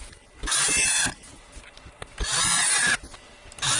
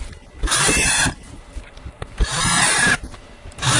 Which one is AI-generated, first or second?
second